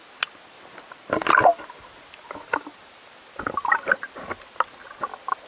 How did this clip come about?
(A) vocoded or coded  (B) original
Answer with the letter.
B